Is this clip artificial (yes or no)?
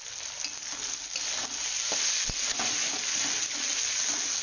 no